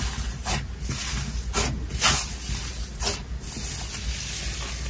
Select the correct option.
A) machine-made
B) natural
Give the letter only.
B